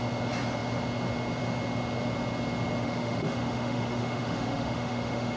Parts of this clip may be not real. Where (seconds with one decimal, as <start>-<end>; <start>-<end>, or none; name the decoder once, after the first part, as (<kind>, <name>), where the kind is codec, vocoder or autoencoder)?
2.8-5.4 (autoencoder, DAC-VAE)

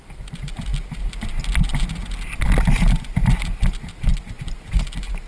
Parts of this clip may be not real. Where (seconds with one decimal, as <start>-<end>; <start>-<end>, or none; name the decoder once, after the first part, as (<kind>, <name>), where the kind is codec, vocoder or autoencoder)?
none

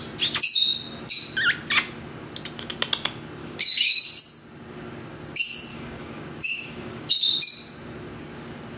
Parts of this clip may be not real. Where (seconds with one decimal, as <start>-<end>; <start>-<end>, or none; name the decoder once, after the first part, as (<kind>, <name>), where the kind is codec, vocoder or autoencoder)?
3.4-4.0 (codec, DAC); 5.7-7.1

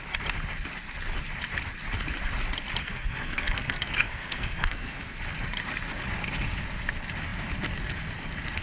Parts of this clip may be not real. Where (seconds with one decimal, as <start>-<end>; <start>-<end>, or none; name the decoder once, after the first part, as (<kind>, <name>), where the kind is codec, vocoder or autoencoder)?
2.8-5.2 (codec, SNAC)

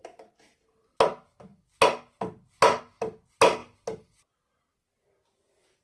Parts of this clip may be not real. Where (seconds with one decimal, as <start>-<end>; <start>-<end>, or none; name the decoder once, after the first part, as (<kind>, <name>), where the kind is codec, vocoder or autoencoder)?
none

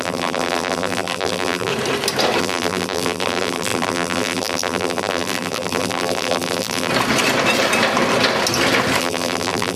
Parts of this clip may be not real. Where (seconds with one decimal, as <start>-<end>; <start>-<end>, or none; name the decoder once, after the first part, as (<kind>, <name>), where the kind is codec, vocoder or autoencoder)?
0.0-1.7 (vocoder, BigVGAN v2); 2.4-6.9; 9.0-9.8

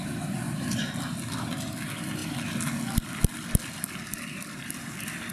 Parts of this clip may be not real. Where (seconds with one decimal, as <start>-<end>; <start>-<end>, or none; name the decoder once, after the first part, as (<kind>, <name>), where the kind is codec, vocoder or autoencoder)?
none